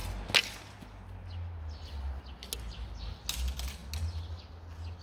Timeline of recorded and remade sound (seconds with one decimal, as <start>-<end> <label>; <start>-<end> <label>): 0.0-5.0 recorded